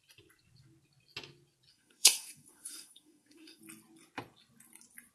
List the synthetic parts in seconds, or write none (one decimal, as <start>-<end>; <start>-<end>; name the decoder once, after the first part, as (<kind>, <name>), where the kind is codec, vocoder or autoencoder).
1.7-3.6 (codec, SNAC)